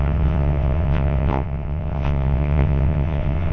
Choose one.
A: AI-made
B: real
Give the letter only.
A